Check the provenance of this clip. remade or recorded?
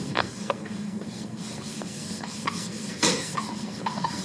remade